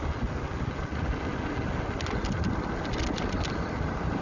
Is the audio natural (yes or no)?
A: yes